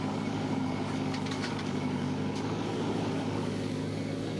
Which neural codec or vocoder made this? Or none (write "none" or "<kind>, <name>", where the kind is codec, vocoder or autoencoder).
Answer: codec, DAC